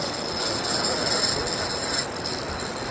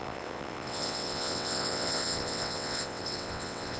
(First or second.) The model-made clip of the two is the second